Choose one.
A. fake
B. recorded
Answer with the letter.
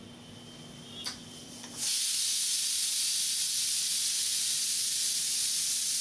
B